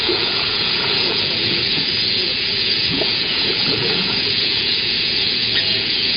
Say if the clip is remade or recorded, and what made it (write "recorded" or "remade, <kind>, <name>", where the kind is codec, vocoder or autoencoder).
remade, vocoder, Vocos